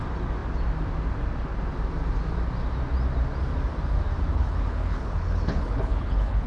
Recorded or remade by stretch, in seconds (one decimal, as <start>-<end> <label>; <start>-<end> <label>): 0.0-4.3 recorded; 4.3-6.5 remade